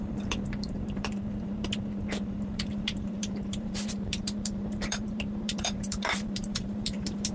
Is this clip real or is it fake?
fake